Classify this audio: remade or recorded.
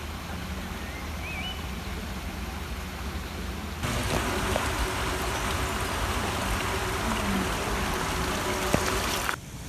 recorded